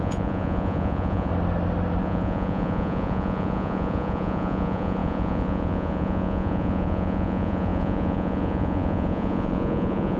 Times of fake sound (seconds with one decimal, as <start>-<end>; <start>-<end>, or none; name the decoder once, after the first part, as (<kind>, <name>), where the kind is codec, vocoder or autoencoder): 0.0-1.3 (vocoder, Vocos); 2.0-10.2